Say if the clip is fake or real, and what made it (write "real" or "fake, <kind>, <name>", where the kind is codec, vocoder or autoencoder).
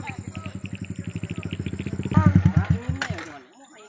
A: real